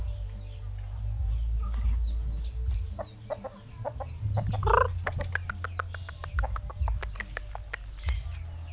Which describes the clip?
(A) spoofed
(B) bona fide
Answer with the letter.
B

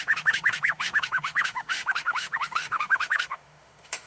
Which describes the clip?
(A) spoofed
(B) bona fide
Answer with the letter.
A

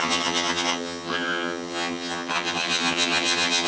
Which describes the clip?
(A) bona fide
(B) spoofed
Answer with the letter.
B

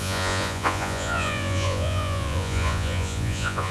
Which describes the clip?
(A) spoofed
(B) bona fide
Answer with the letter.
A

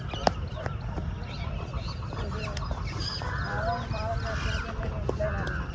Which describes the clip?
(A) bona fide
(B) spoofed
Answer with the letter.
B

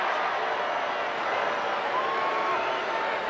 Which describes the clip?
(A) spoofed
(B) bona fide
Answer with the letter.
B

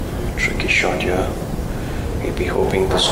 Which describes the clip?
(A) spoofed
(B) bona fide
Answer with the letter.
B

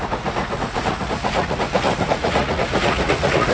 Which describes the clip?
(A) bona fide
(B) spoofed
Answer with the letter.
B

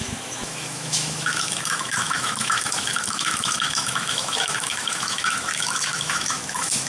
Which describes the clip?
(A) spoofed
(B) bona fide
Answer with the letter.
A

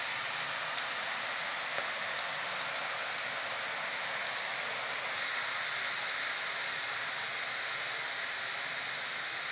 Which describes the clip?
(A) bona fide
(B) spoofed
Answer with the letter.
A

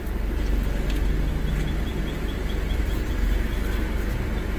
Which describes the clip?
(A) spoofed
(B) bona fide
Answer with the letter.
B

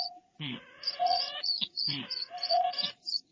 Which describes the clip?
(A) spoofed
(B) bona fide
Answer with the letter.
A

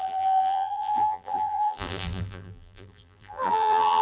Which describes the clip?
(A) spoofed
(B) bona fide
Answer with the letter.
A